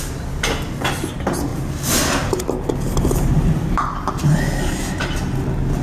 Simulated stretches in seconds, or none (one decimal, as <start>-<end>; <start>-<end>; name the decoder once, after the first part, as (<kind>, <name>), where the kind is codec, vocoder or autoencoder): none